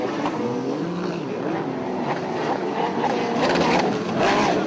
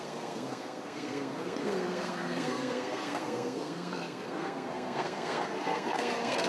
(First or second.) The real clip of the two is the first